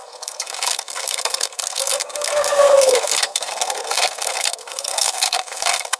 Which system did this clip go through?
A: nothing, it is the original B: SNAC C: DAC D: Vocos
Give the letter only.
B